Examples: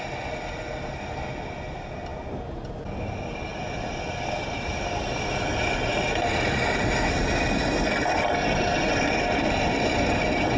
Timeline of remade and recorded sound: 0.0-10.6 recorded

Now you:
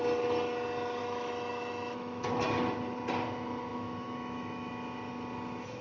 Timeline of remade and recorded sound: 0.0-1.0 recorded; 1.0-2.3 remade; 2.3-3.7 recorded; 3.7-4.7 remade; 4.7-5.8 recorded

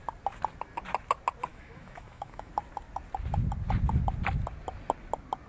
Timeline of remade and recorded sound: 0.0-1.5 recorded; 1.5-2.5 remade; 2.5-5.5 recorded